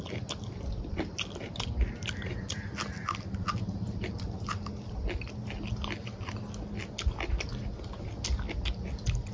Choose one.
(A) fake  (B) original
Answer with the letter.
B